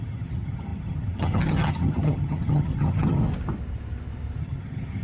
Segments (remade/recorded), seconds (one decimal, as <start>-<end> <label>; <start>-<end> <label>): 0.0-3.2 remade; 3.2-4.4 recorded; 4.4-5.0 remade